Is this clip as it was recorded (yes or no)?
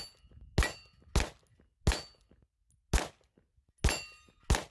yes